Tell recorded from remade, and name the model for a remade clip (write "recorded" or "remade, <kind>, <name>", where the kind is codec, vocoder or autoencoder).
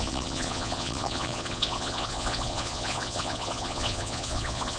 remade, vocoder, Vocos